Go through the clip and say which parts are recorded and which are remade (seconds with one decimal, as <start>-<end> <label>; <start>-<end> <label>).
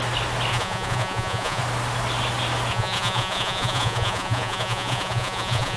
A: 0.0-0.5 recorded; 0.5-1.6 remade; 1.6-2.7 recorded; 2.7-5.8 remade